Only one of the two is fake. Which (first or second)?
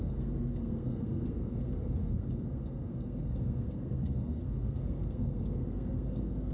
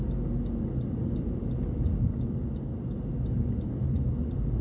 first